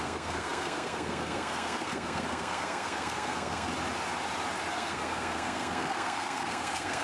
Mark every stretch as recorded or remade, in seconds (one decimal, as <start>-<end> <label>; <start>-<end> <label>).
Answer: 0.0-3.7 remade; 3.7-4.7 recorded; 4.7-7.0 remade